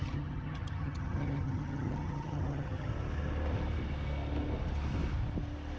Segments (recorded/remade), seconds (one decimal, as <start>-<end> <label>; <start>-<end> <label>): 0.0-2.9 remade; 2.9-5.8 recorded